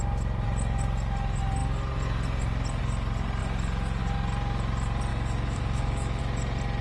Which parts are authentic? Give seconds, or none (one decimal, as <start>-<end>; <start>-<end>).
0.0-5.1; 6.2-6.8